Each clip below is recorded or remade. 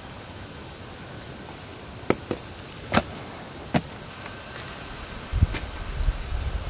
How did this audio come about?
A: recorded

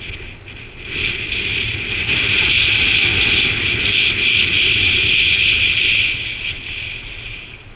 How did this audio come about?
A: recorded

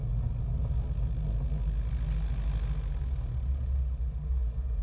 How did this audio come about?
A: recorded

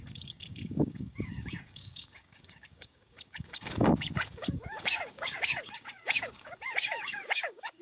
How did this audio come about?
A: remade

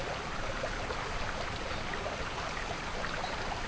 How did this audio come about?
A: recorded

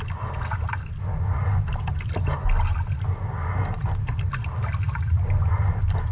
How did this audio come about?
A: recorded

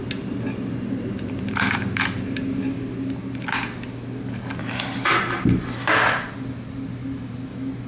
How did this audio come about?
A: recorded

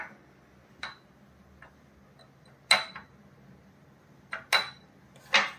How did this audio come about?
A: recorded